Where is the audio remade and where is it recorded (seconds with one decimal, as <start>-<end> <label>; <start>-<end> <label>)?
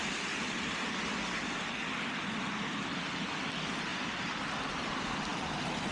0.0-3.9 recorded; 3.9-4.5 remade; 4.5-5.3 recorded; 5.3-5.9 remade